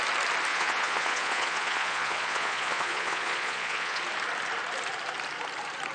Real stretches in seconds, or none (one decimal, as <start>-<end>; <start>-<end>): 0.0-0.5; 4.0-5.9